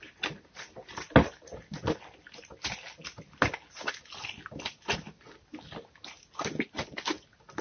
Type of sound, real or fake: real